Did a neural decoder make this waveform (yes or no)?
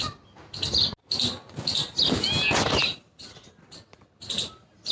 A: no